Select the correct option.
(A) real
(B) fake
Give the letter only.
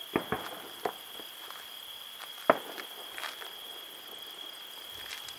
A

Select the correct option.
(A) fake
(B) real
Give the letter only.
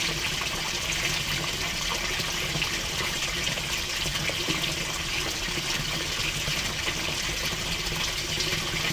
B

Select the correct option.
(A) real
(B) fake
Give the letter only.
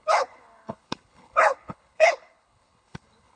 B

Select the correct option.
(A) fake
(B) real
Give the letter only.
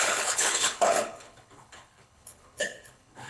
A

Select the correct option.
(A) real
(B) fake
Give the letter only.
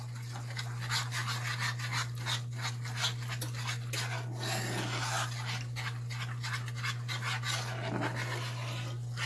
A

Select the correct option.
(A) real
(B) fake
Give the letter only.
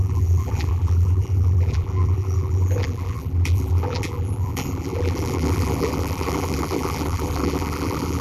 B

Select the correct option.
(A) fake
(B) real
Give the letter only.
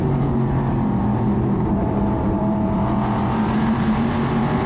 A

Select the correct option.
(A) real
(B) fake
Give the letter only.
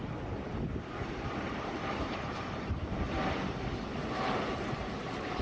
B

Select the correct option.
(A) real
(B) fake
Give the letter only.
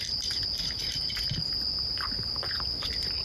A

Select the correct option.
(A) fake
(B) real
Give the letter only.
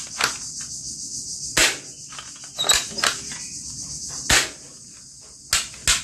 B